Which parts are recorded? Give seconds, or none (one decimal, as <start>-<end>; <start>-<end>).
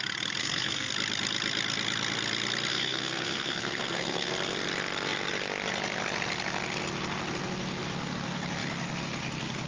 0.0-0.4; 0.9-2.7; 4.3-9.7